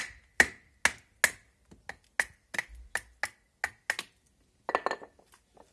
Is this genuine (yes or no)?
yes